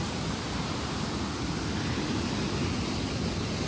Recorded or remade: recorded